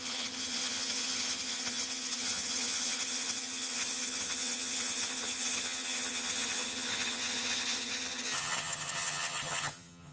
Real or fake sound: fake